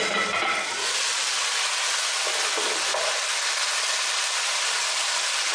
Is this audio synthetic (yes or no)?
no